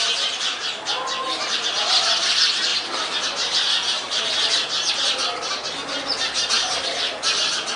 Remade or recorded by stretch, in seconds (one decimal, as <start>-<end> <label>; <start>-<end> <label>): 0.0-7.8 recorded